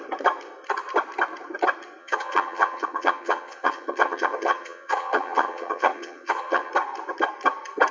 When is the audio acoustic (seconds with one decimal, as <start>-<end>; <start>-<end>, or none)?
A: 0.0-2.0; 6.7-7.9